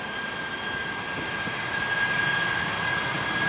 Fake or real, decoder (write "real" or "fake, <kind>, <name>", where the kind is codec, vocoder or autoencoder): real